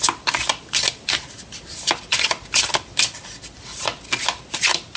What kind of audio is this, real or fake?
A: real